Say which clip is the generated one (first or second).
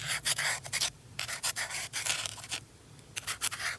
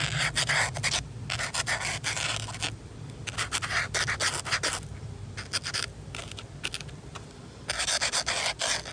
first